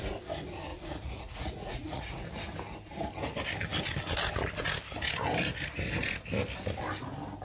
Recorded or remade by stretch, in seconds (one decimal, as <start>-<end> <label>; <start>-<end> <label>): 0.0-0.7 recorded; 0.7-2.2 remade; 2.2-7.4 recorded